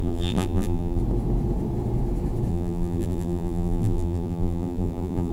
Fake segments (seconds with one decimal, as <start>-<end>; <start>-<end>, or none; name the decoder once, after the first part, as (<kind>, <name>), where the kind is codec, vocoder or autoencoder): 0.0-1.0 (vocoder, BigVGAN v2); 2.5-5.3